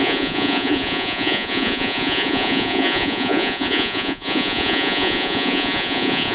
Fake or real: fake